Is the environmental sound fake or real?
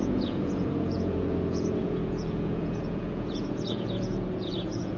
fake